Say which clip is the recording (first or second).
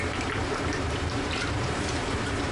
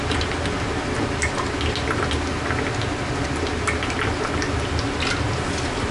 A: second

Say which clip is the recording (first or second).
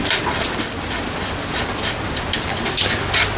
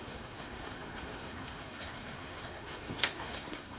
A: first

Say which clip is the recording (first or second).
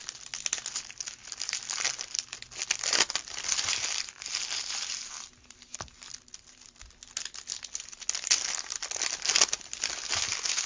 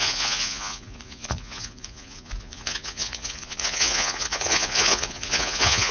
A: first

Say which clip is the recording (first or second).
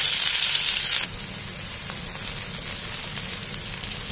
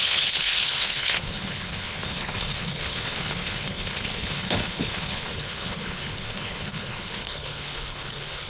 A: first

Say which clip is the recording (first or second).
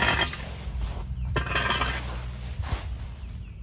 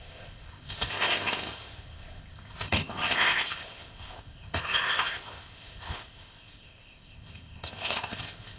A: first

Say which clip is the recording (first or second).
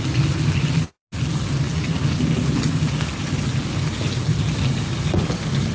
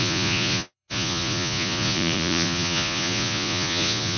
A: first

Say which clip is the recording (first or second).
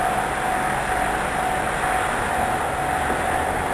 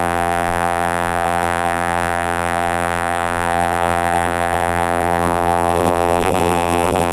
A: first